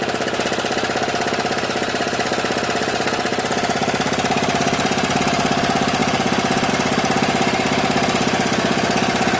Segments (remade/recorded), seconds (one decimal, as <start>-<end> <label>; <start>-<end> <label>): 0.0-9.4 recorded